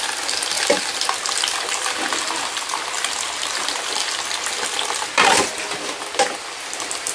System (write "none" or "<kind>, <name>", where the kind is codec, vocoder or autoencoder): none